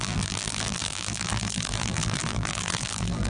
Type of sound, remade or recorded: remade